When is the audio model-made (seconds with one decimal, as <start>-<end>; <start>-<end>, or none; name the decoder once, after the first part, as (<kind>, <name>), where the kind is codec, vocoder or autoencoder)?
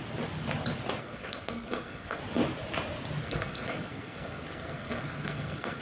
1.0-2.2 (codec, SNAC); 3.2-5.8